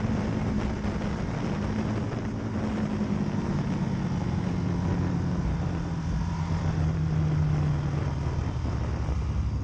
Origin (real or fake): real